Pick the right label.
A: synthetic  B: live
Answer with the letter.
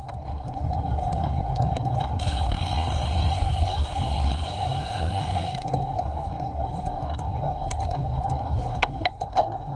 A